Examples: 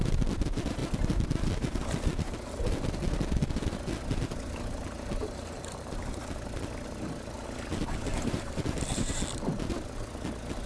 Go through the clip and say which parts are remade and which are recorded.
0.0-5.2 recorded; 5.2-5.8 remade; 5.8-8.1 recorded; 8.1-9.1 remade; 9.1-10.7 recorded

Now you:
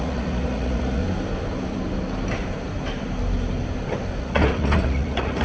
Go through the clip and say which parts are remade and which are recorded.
0.0-1.0 remade; 1.0-4.2 recorded; 4.2-5.4 remade

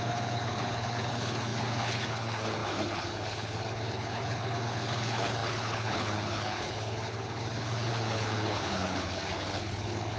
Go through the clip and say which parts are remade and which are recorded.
0.0-10.2 remade

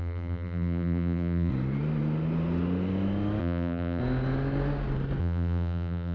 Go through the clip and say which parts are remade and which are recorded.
0.0-1.5 remade; 1.5-3.4 recorded; 3.4-4.0 remade; 4.0-5.2 recorded; 5.2-6.1 remade

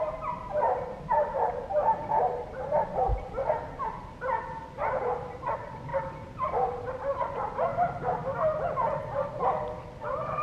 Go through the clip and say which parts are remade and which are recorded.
0.0-2.9 remade; 2.9-4.1 recorded; 4.1-5.9 remade; 5.9-6.9 recorded; 6.9-7.7 remade; 7.7-9.0 recorded; 9.0-10.4 remade

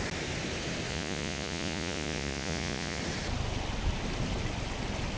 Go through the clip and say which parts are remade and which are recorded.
0.0-0.9 recorded; 0.9-3.0 remade; 3.0-5.2 recorded

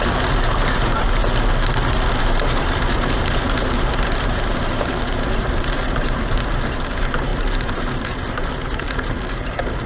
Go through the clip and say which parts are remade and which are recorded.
0.0-1.2 remade; 1.2-2.2 recorded; 2.2-9.9 remade